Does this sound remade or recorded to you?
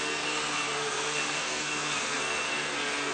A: remade